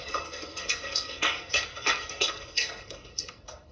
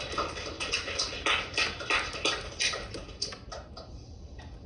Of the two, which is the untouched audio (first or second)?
second